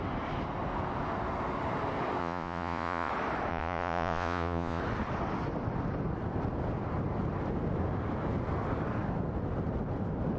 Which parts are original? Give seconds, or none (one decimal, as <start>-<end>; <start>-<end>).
0.0-2.2; 3.1-3.5; 4.8-10.4